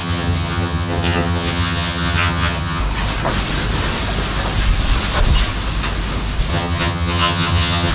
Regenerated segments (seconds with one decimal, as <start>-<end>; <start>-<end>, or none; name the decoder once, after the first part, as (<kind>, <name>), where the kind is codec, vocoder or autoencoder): 0.0-2.8 (vocoder, HiFi-GAN); 6.5-7.9